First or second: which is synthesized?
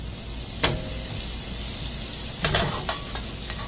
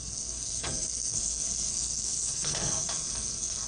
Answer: second